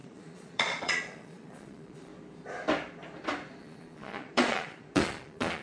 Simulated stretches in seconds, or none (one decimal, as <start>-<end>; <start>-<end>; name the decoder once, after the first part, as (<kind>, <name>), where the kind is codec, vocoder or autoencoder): 0.0-2.1 (vocoder, Vocos); 3.6-5.6